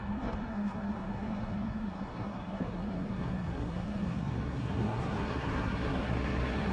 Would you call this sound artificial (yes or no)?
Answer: yes